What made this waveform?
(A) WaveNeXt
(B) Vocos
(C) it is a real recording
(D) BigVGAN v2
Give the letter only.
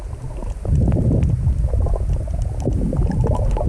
C